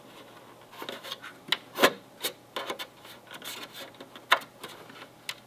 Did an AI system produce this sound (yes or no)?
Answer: no